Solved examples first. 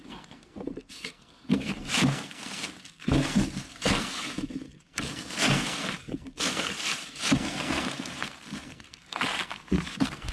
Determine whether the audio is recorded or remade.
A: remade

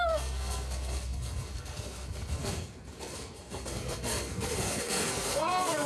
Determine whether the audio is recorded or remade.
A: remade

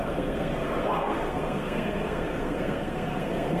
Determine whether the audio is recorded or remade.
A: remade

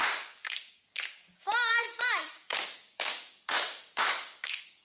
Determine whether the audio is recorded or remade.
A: remade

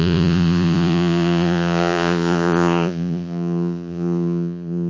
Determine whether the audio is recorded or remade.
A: remade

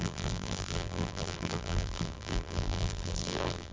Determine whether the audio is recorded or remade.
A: remade